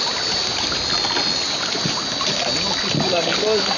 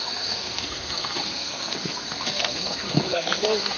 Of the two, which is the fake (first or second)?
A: second